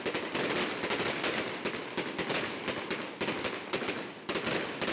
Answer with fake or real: real